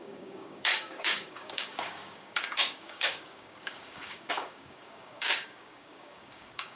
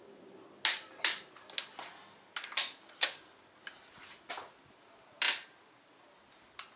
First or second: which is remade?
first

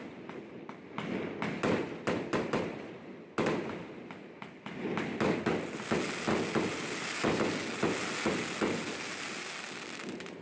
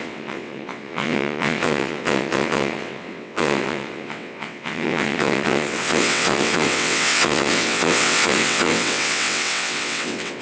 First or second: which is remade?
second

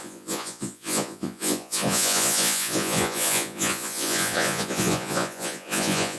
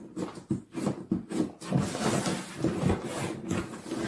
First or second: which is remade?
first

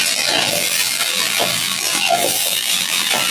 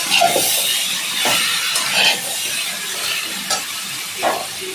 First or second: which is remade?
first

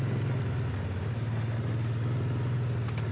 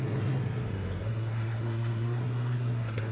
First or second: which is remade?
second